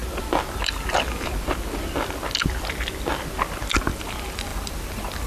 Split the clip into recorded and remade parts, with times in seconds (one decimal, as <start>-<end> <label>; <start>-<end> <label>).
0.0-4.5 recorded; 4.5-5.3 remade